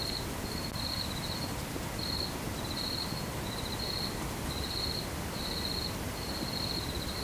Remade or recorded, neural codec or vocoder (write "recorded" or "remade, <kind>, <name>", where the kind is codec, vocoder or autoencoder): recorded